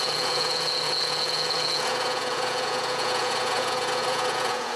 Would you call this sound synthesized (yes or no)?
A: yes